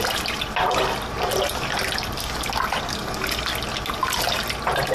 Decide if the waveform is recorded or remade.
recorded